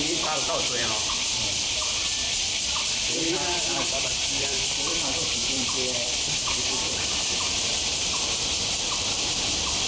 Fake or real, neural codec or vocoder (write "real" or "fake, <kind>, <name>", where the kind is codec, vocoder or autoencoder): fake, vocoder, BigVGAN v2